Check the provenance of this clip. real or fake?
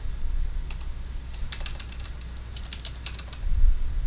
real